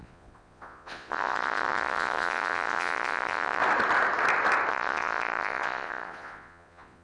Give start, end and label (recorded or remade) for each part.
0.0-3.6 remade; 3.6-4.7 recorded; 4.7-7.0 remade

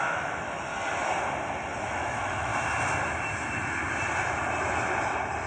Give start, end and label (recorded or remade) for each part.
0.0-0.7 remade; 0.7-1.8 recorded; 1.8-2.5 remade; 2.5-5.5 recorded

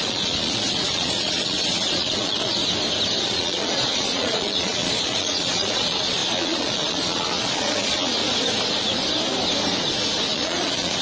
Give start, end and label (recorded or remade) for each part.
0.0-2.6 remade; 2.6-3.2 recorded; 3.2-8.2 remade; 8.2-10.3 recorded; 10.3-11.0 remade

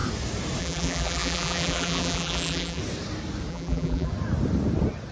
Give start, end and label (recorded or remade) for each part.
0.0-0.6 recorded; 0.6-2.8 remade; 2.8-3.5 recorded; 3.5-4.1 remade; 4.1-5.1 recorded

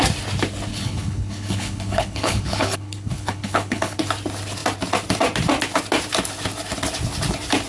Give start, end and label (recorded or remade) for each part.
0.0-0.7 recorded; 0.7-4.0 remade; 4.0-7.7 recorded

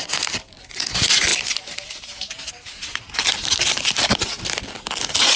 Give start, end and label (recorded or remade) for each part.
0.0-5.4 recorded

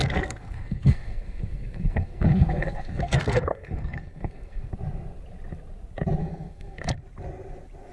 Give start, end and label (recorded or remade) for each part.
0.0-4.7 remade; 4.7-6.2 recorded; 6.2-6.9 remade; 6.9-7.9 recorded

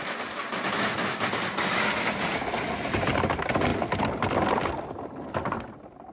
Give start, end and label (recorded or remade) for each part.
0.0-3.7 recorded; 3.7-4.8 remade; 4.8-6.1 recorded